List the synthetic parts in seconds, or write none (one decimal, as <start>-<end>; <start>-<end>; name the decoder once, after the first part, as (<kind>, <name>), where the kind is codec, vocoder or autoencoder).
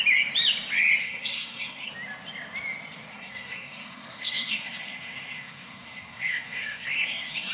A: 1.0-1.9 (codec, SNAC); 3.1-7.5